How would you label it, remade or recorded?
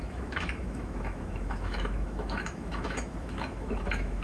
remade